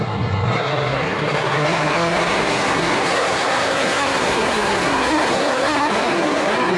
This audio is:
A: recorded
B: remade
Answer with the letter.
B